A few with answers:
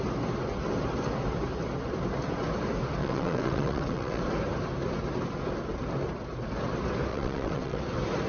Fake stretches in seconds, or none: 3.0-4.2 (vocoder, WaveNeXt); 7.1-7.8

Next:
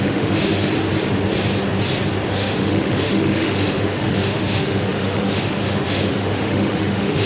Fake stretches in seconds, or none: 0.0-0.7 (autoencoder, DAC-VAE); 2.3-7.3